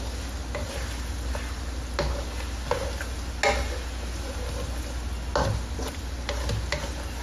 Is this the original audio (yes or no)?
yes